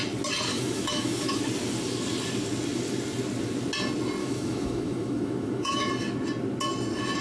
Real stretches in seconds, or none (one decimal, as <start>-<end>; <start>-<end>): 0.0-0.5; 1.4-4.2; 5.9-7.2